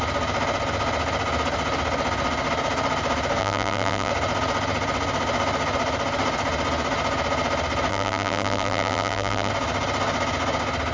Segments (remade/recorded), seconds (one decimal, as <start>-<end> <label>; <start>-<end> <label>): 0.0-3.4 recorded; 3.4-4.1 remade; 4.1-7.9 recorded; 7.9-9.5 remade; 9.5-10.9 recorded